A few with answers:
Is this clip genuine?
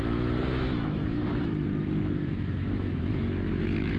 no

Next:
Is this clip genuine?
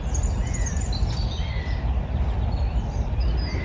yes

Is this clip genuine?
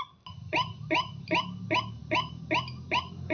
yes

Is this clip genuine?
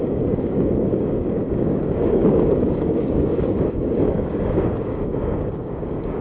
no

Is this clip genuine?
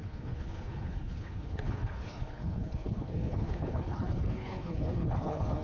no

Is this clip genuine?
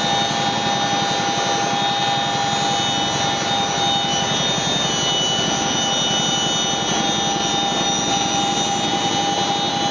yes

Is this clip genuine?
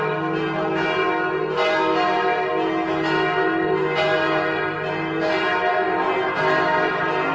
yes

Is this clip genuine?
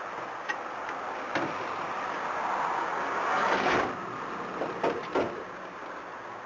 yes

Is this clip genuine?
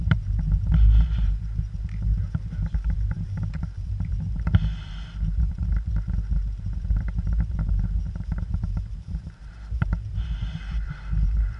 no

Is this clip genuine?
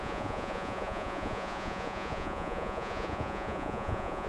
no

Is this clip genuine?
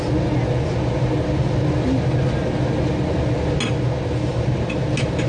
yes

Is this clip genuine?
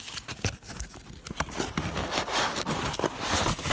yes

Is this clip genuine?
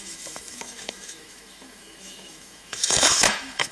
no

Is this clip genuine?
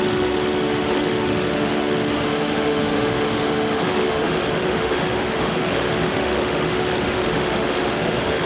no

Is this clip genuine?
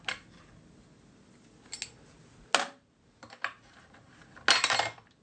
yes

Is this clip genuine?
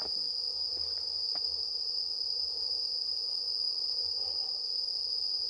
yes